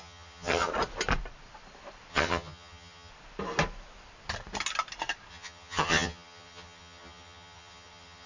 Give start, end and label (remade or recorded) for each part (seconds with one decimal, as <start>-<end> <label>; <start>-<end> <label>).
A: 0.0-0.7 remade; 0.7-2.1 recorded; 2.1-3.1 remade; 3.1-5.3 recorded; 5.3-8.3 remade